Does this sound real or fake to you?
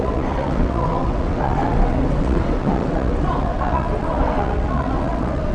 fake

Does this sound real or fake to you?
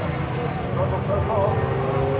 fake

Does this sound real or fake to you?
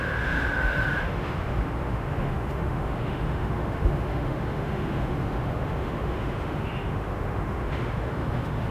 fake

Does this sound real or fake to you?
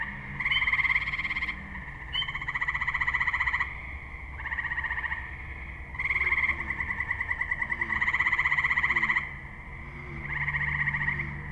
real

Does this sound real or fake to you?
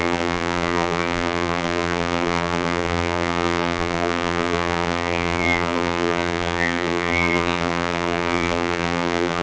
fake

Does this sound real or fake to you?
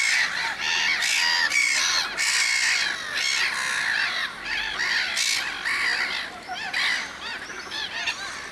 real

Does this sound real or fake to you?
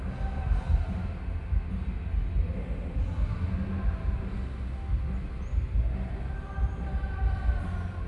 real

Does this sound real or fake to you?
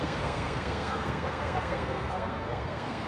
fake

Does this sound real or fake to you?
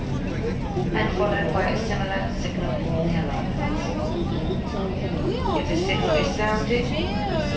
real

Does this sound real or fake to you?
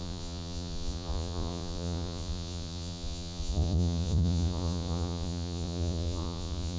fake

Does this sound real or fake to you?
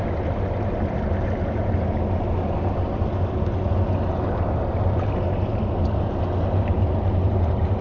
real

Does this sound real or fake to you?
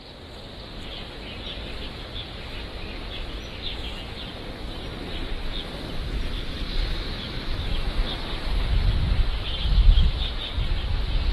real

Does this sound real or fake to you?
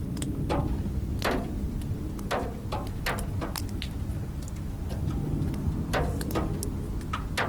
real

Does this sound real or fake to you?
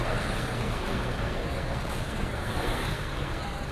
fake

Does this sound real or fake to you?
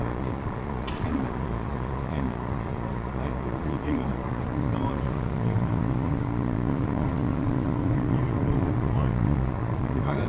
fake